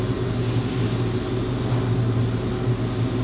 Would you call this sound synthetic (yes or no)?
no